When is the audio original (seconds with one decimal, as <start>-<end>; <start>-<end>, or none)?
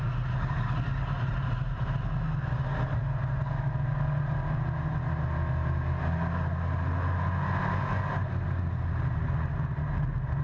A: 0.0-10.4